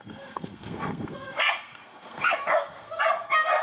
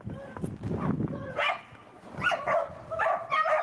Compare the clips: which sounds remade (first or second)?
first